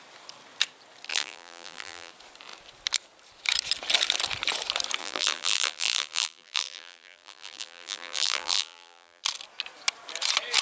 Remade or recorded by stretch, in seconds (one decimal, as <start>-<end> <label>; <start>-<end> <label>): 0.0-1.1 recorded; 1.1-2.1 remade; 2.1-5.0 recorded; 5.0-9.2 remade; 9.2-10.6 recorded